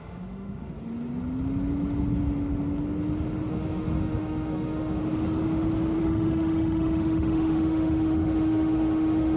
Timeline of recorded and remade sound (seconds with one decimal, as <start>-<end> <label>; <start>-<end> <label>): 0.0-0.7 remade; 0.7-3.5 recorded; 3.5-5.0 remade; 5.0-6.0 recorded; 6.0-9.4 remade